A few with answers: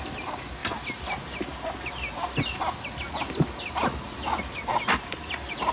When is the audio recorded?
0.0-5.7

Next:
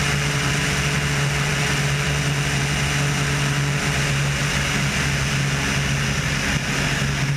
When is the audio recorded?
0.0-7.4

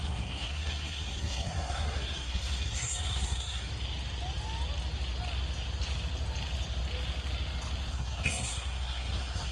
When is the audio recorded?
3.7-7.9

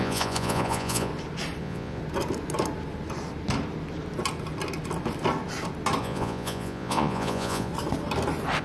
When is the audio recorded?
1.1-1.6; 2.0-6.0; 7.7-8.6

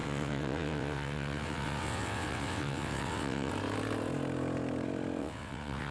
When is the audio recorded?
3.5-5.2

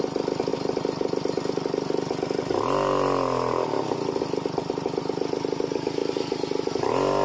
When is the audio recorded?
0.0-7.2